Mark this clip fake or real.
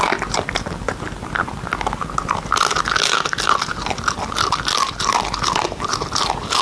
real